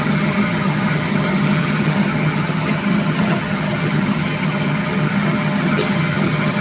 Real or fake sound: fake